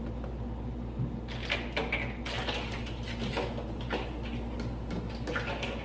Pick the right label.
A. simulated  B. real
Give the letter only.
B